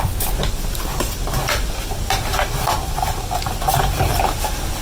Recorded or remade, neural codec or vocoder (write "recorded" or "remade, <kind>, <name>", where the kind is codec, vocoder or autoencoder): recorded